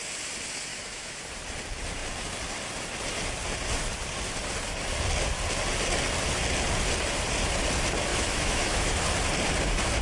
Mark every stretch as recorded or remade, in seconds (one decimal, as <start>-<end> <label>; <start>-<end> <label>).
0.0-0.7 recorded; 0.7-1.2 remade; 1.2-8.1 recorded; 8.1-9.0 remade; 9.0-10.0 recorded

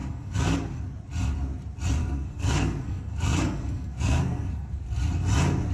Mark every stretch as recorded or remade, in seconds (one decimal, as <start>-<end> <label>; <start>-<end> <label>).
0.0-0.8 remade; 0.8-2.0 recorded; 2.0-4.8 remade; 4.8-5.7 recorded

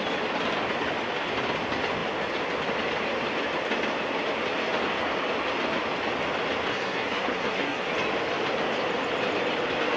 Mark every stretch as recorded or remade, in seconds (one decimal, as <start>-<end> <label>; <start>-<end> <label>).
0.0-6.7 recorded; 6.7-7.9 remade; 7.9-10.0 recorded

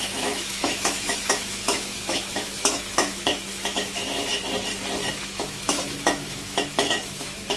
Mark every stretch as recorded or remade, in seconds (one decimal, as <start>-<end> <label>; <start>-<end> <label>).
0.0-4.3 remade; 4.3-5.1 recorded; 5.1-7.6 remade

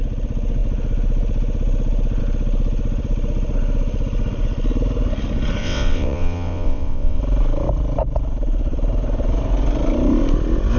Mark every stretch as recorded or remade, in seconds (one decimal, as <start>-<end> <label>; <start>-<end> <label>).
0.0-5.6 recorded; 5.6-7.2 remade; 7.2-10.8 recorded

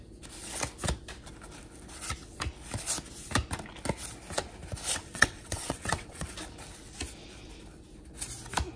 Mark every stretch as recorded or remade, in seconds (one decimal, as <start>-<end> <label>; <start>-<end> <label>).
0.0-5.0 recorded; 5.0-6.3 remade; 6.3-8.8 recorded

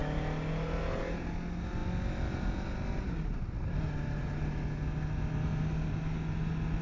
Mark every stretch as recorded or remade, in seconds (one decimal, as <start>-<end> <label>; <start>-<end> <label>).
0.0-6.8 recorded

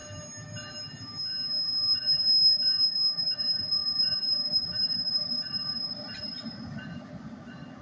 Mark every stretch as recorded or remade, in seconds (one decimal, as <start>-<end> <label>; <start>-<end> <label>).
0.0-7.8 recorded